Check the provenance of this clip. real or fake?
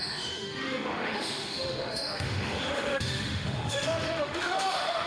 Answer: fake